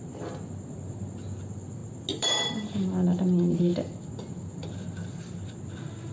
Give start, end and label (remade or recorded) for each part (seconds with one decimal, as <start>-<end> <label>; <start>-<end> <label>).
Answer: 0.0-6.1 recorded